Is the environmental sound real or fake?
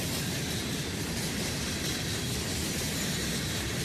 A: fake